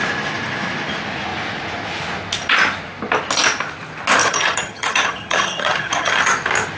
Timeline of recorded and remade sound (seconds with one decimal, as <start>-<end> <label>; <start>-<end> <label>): 0.0-4.2 recorded; 4.2-6.2 remade; 6.2-6.8 recorded